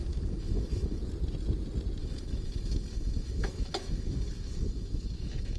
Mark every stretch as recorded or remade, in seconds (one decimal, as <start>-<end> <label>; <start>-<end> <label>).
0.0-1.0 remade; 1.0-2.0 recorded; 2.0-5.6 remade